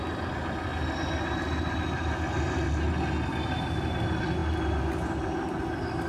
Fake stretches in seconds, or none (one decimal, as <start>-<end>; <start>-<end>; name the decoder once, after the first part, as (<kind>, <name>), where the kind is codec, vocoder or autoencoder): none